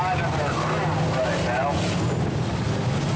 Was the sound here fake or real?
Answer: real